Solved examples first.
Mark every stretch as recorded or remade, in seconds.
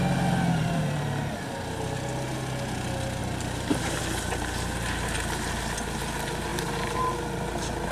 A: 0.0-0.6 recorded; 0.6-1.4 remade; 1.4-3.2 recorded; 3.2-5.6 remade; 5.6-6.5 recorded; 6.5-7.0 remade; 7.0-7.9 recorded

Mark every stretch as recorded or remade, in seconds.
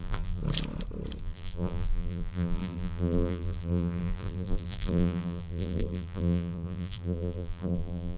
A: 0.0-0.4 remade; 0.4-1.2 recorded; 1.2-8.2 remade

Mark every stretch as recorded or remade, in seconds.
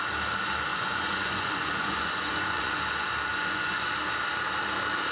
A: 0.0-0.7 recorded; 0.7-2.8 remade; 2.8-3.3 recorded; 3.3-3.9 remade; 3.9-5.1 recorded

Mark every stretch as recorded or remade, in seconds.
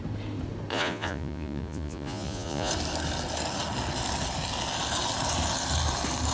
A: 0.0-0.7 recorded; 0.7-2.7 remade; 2.7-6.3 recorded